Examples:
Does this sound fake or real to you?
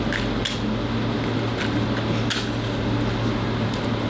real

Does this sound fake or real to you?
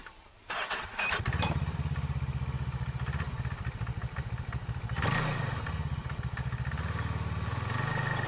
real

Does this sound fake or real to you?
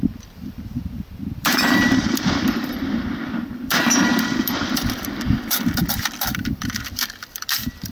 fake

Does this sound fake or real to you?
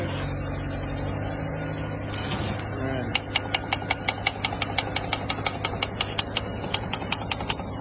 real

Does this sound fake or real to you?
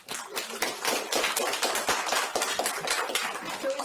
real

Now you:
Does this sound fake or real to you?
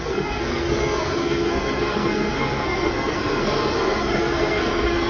fake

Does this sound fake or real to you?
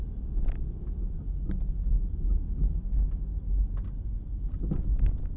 real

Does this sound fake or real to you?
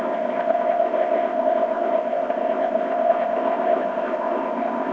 fake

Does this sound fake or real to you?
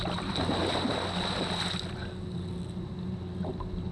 real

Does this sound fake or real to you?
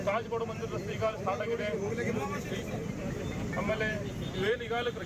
fake